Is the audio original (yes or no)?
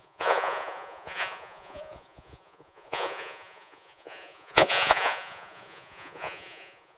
no